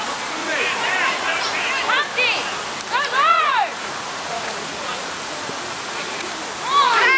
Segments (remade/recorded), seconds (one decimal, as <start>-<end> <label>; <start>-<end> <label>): 0.0-0.4 recorded; 0.4-1.6 remade; 1.6-3.3 recorded; 3.3-6.3 remade; 6.3-7.2 recorded